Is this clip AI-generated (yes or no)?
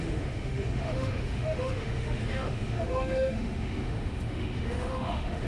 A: yes